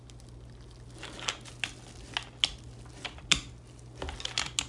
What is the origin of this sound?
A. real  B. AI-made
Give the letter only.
A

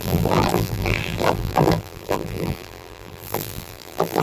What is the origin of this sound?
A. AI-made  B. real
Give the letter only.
A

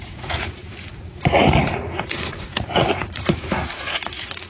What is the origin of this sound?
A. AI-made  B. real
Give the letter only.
A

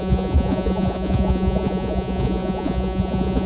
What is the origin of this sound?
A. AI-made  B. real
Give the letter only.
A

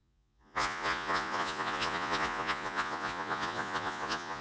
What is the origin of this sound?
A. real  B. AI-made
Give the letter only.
B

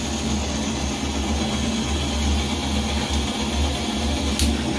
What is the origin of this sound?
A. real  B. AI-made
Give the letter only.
A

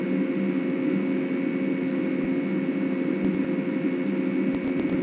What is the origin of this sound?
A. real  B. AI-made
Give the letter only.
A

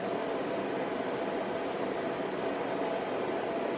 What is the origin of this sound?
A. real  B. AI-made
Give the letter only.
A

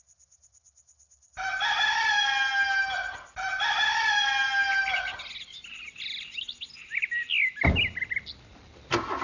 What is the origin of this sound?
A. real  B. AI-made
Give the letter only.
A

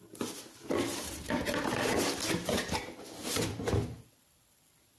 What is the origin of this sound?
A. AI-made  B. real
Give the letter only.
B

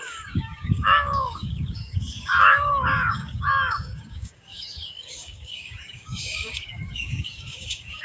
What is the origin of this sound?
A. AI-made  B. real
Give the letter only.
A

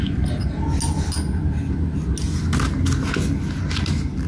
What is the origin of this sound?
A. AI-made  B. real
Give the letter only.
B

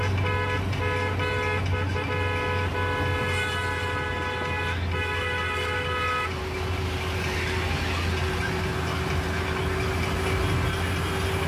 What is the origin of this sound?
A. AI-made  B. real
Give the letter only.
B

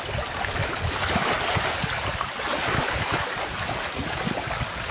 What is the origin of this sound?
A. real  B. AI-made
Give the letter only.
A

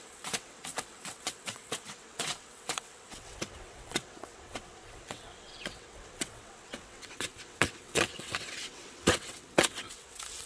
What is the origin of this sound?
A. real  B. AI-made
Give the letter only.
B